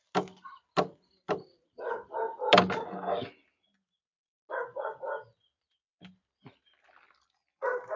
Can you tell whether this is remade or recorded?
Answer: recorded